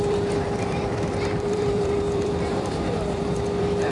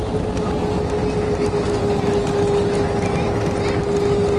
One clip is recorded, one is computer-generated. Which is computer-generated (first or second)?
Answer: first